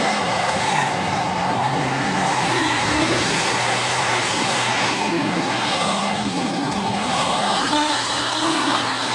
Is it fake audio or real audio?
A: fake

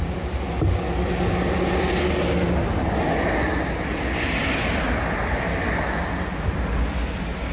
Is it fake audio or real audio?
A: real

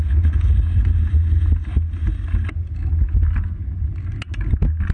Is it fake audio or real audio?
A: real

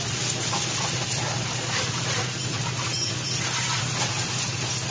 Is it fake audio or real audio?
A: real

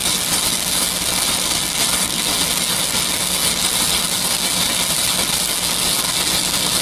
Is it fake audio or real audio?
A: real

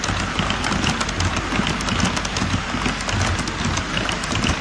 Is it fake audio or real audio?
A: real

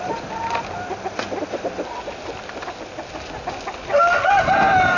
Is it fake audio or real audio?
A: real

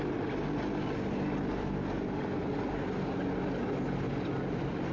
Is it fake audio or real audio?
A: real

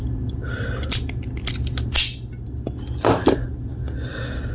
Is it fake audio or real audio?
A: real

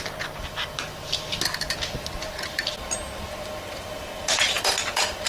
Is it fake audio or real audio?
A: real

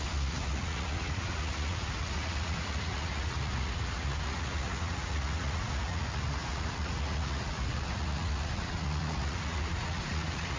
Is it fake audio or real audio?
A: fake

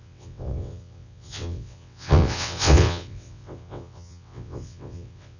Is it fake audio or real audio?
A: fake